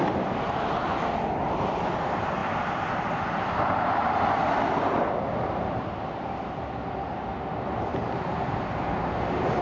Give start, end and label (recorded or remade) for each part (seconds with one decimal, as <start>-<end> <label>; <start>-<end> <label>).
0.0-7.9 recorded; 7.9-8.7 remade; 8.7-9.6 recorded